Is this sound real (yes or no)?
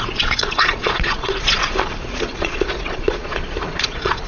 no